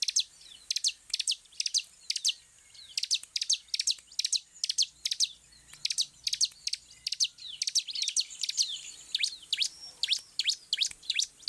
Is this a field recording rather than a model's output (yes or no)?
yes